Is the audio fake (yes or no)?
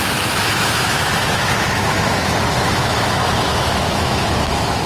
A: yes